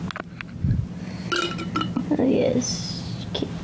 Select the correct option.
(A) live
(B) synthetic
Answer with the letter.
A